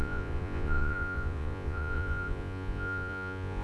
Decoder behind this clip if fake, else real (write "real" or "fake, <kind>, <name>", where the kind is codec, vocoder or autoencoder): fake, vocoder, Vocos